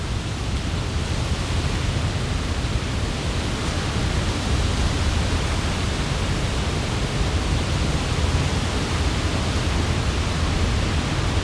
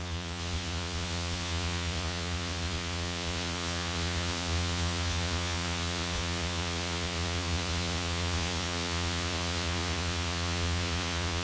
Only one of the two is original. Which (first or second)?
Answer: first